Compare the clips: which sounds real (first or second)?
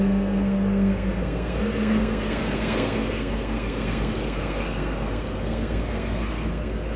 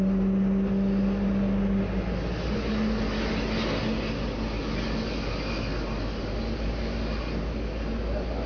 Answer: second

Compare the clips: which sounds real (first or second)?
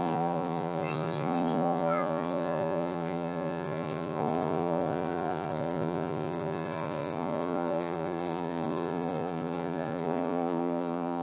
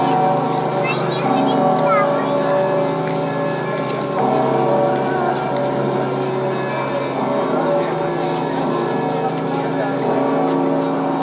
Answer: second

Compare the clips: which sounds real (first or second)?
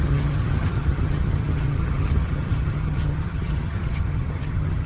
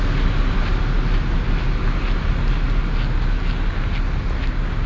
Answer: second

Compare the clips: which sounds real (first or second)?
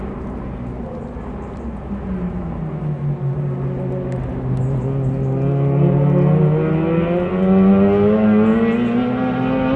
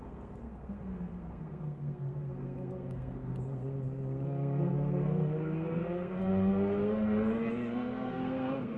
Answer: first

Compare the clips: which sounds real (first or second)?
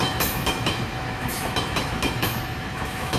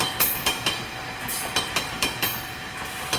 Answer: second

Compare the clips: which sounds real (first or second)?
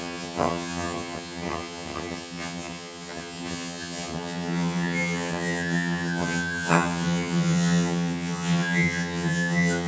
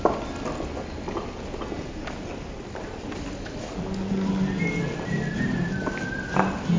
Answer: second